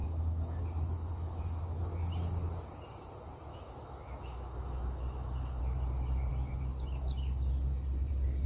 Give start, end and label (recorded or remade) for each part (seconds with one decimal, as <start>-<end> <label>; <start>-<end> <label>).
0.0-0.6 remade; 0.6-1.1 recorded; 1.1-1.6 remade; 1.6-3.5 recorded; 3.5-5.6 remade; 5.6-8.5 recorded